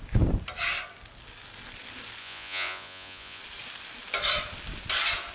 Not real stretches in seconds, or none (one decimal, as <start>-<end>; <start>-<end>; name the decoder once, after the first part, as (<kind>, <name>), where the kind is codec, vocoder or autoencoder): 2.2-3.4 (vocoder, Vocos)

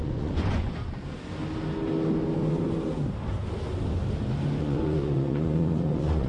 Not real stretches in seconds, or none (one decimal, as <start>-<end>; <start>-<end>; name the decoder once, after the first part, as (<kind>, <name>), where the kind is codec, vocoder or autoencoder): 0.0-0.8 (vocoder, Vocos); 4.6-6.3

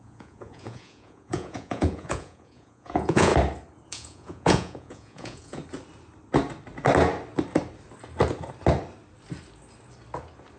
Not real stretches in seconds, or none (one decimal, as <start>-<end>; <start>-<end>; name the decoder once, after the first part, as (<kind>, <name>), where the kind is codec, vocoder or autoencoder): 0.0-3.3 (vocoder, Vocos); 3.9-5.6

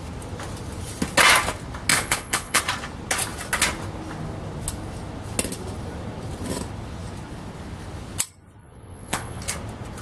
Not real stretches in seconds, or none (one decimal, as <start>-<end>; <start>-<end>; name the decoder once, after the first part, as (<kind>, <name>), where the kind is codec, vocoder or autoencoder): 1.9-2.6 (vocoder, Vocos); 8.6-9.4

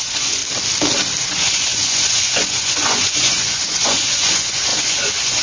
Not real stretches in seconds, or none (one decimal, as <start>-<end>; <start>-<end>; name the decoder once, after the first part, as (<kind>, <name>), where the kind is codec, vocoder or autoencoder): 0.0-0.4 (vocoder, Vocos); 1.2-5.4

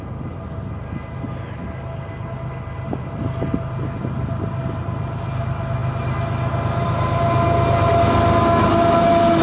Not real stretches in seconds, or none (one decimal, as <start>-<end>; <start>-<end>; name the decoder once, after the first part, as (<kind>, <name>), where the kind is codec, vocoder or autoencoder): none

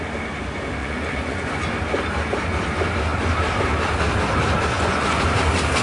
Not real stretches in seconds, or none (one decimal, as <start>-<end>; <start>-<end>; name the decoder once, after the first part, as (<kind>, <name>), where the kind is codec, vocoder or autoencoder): 0.8-1.6 (vocoder, Vocos); 4.7-5.2

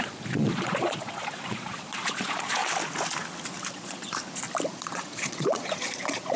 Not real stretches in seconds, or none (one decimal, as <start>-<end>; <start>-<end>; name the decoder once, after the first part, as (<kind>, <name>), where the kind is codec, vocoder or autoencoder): 0.0-2.6 (vocoder, Vocos); 3.7-4.2; 4.7-6.4